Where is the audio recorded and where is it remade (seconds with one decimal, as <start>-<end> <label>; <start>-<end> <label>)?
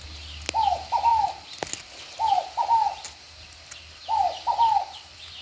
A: 0.0-5.4 recorded